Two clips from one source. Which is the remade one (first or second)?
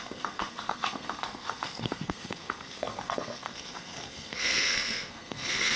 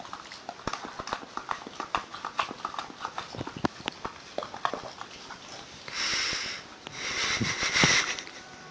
first